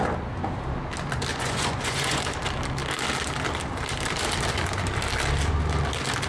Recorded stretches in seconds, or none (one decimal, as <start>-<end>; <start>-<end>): 0.0-1.3; 2.2-6.3